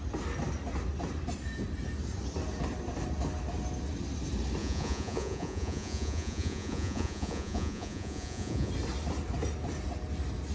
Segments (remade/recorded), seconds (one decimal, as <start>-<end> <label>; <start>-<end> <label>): 0.0-4.6 recorded; 4.6-8.7 remade; 8.7-10.5 recorded